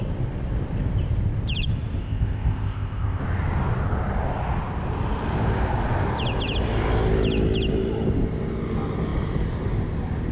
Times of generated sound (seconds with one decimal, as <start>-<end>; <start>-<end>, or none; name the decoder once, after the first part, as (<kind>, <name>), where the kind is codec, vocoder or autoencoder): 2.0-3.2 (codec, ZipCodec)

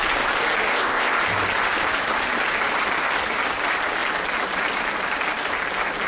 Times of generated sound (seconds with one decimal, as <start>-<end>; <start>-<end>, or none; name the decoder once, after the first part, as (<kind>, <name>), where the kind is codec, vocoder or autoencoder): 0.7-1.2 (codec, ZipCodec)

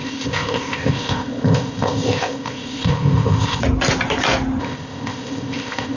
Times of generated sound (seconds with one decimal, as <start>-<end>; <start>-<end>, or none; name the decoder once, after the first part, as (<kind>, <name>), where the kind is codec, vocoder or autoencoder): 0.0-3.6 (codec, ZipCodec); 4.6-6.0

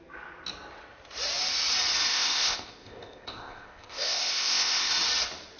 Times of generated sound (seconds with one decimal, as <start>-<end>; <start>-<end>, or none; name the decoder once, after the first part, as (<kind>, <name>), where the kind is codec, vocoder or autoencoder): 2.1-4.9 (codec, ZipCodec)